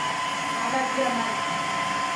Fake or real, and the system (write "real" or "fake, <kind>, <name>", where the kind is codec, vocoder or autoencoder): real